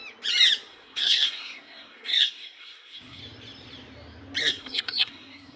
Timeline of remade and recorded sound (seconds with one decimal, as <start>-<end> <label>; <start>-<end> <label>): 0.0-0.7 recorded; 0.7-3.2 remade; 3.2-4.4 recorded; 4.4-5.6 remade